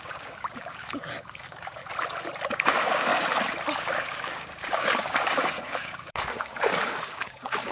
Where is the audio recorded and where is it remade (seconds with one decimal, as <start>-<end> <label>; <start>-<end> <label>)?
0.0-1.8 remade; 1.8-2.5 recorded; 2.5-3.1 remade; 3.1-3.8 recorded; 3.8-7.7 remade